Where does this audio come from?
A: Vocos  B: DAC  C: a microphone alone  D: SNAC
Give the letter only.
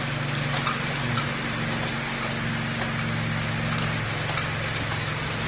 C